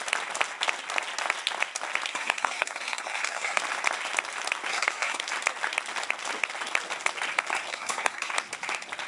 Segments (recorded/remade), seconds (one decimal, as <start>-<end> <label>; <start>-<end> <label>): 0.0-2.1 recorded; 2.1-3.6 remade; 3.6-4.7 recorded; 4.7-5.2 remade; 5.2-7.7 recorded; 7.7-8.3 remade; 8.3-9.1 recorded